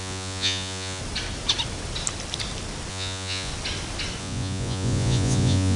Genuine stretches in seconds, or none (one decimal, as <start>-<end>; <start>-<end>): 1.0-2.9; 3.5-4.2